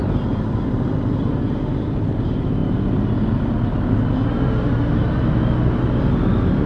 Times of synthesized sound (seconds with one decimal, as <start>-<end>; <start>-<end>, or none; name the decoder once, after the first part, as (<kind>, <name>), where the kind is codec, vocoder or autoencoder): none